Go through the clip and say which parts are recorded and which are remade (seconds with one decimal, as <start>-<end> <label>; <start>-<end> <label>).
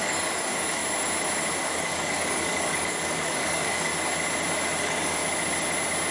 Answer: 0.0-0.8 remade; 0.8-1.6 recorded; 1.6-3.9 remade; 3.9-4.8 recorded; 4.8-5.2 remade; 5.2-6.1 recorded